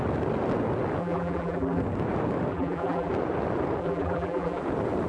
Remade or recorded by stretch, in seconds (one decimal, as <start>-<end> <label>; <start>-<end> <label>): 0.0-1.0 recorded; 1.0-1.8 remade; 1.8-2.5 recorded; 2.5-3.1 remade; 3.1-3.8 recorded; 3.8-4.6 remade; 4.6-5.1 recorded

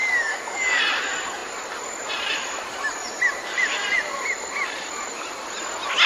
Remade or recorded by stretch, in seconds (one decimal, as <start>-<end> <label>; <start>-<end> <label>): 0.0-0.8 remade; 0.8-6.1 recorded

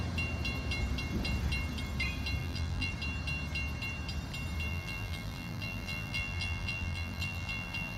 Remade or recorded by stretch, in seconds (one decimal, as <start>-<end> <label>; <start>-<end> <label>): 0.0-2.4 recorded; 2.4-2.9 remade; 2.9-4.7 recorded; 4.7-8.0 remade

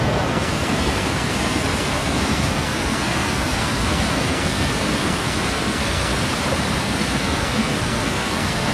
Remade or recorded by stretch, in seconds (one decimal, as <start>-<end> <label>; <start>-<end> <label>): 0.0-6.1 remade; 6.1-6.8 recorded; 6.8-8.7 remade

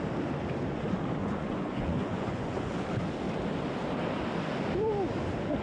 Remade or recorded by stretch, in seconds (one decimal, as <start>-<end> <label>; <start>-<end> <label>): 0.0-1.2 recorded; 1.2-2.6 remade; 2.6-5.6 recorded

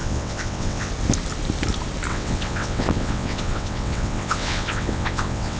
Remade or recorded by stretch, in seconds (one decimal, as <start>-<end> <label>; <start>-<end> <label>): 0.0-0.9 remade; 0.9-2.1 recorded; 2.1-5.6 remade